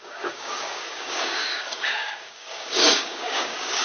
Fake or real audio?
fake